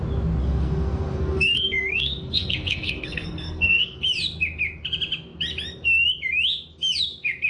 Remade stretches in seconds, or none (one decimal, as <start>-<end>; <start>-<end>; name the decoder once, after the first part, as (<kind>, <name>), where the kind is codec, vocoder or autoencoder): 0.4-4.0 (codec, SNAC)